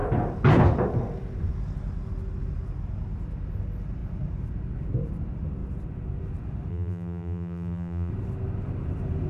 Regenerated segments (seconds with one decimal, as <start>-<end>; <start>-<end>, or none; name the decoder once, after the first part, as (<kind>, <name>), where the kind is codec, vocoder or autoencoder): 6.7-8.1 (vocoder, BigVGAN v2)